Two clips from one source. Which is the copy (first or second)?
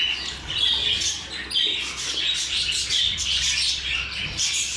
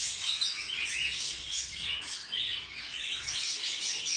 second